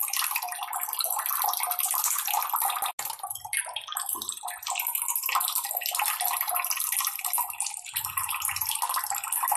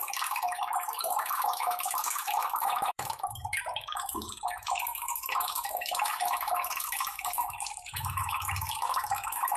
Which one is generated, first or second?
second